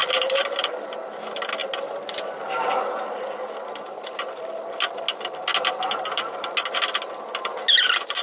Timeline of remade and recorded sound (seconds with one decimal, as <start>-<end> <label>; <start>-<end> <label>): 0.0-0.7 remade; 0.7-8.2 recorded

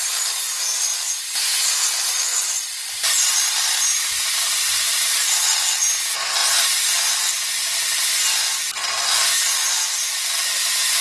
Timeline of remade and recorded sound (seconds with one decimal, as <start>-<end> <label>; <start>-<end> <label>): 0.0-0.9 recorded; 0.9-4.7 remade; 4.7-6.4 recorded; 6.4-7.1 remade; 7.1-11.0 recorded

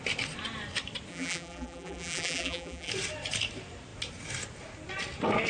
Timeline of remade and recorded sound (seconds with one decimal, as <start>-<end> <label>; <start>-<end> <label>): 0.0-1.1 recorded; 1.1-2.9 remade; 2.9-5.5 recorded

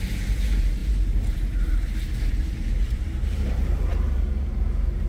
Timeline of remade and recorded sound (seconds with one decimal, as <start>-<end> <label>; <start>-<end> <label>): 0.0-5.1 remade

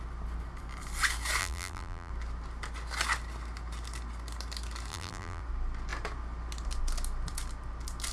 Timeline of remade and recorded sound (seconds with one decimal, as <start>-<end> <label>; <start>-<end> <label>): 0.0-1.4 recorded; 1.4-2.1 remade; 2.1-4.9 recorded; 4.9-5.4 remade; 5.4-8.1 recorded

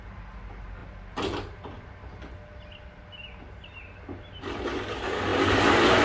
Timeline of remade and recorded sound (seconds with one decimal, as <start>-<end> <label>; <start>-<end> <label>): 0.0-6.0 recorded

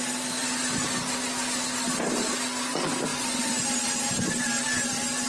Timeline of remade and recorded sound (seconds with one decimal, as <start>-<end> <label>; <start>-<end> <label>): 0.0-5.3 recorded

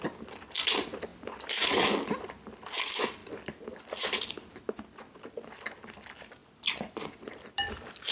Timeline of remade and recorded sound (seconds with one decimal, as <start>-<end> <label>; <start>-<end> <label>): 0.0-1.1 recorded; 1.1-2.2 remade; 2.2-3.2 recorded; 3.2-4.6 remade; 4.6-6.4 recorded; 6.4-8.1 remade